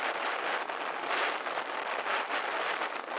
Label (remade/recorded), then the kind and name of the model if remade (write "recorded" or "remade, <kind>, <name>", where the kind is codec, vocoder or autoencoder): recorded